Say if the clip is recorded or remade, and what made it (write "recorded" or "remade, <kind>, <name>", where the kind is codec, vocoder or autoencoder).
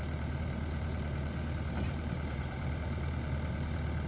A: remade, vocoder, BigVGAN v2